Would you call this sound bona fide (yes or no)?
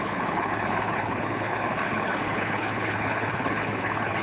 no